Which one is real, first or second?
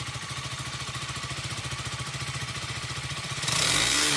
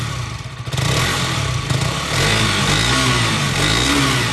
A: second